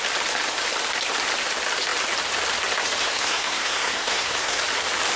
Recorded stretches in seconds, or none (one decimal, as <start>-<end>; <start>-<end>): 0.0-3.0; 4.6-5.2